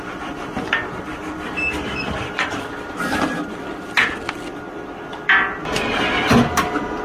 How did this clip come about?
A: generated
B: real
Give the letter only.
B